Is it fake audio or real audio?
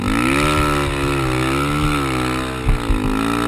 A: real